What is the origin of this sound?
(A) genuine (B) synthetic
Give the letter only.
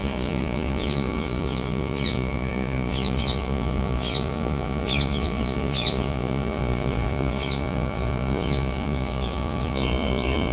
B